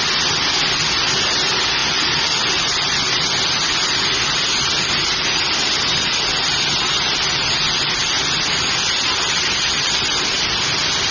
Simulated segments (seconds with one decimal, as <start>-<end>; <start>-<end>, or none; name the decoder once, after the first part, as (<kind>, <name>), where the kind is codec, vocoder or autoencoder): none